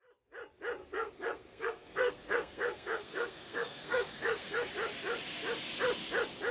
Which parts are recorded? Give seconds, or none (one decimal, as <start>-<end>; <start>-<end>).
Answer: 0.0-0.8; 4.7-6.5